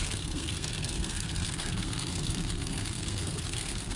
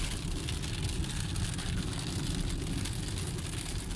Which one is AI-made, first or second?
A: first